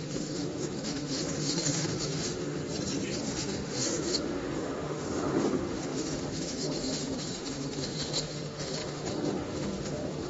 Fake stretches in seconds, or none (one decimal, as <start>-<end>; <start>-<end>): 0.0-2.6; 3.2-10.3